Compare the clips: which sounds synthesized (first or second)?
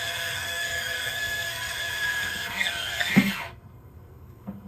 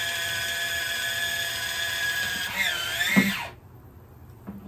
first